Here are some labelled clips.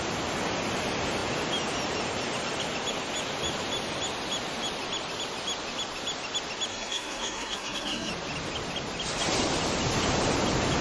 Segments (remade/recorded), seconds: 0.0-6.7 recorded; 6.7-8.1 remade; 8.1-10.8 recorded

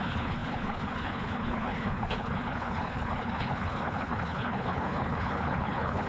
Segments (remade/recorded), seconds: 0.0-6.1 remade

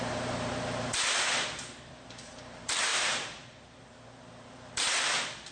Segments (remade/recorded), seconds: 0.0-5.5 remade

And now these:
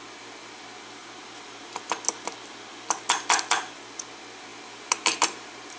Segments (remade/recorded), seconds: 0.0-4.5 recorded; 4.5-5.8 remade